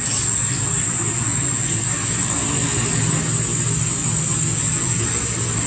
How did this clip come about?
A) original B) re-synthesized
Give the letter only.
A